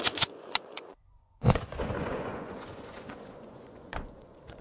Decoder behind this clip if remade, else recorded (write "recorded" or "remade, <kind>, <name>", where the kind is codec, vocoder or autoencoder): remade, vocoder, Vocos